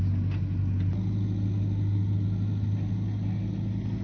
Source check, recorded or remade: recorded